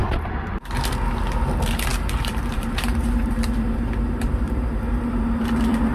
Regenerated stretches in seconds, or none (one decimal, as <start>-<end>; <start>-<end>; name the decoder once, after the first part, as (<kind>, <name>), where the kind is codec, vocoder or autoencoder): 0.0-0.5 (vocoder, BigVGAN v2); 1.9-5.4